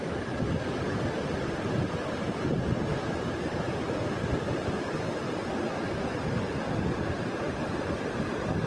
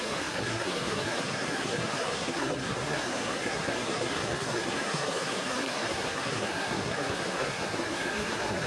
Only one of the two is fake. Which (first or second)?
second